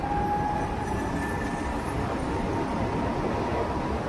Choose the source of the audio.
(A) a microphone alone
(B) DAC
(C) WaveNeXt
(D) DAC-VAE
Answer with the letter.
A